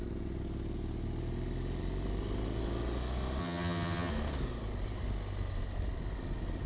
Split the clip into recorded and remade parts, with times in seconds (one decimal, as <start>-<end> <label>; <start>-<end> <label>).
0.0-3.4 recorded; 3.4-4.1 remade; 4.1-6.7 recorded